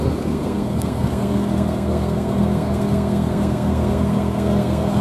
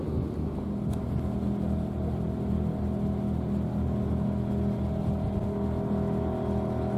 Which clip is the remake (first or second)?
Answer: first